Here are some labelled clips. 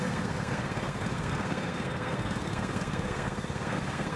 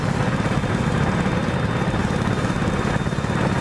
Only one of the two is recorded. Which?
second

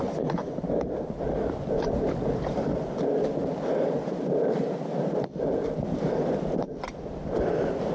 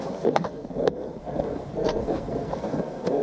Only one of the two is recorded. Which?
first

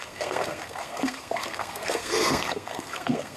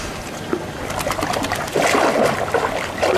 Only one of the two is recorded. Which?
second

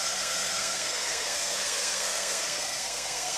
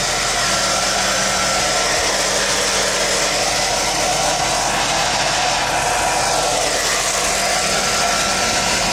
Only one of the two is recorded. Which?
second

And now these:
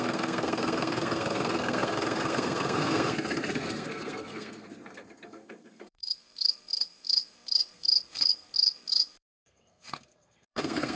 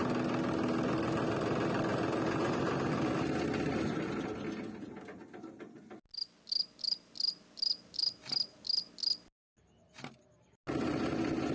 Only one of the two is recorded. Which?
second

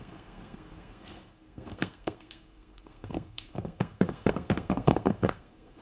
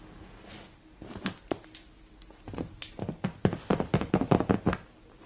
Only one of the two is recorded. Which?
second